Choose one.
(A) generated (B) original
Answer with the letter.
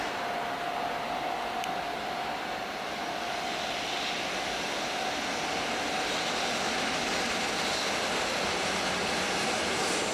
B